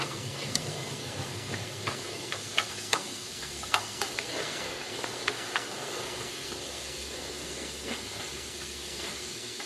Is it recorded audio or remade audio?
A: remade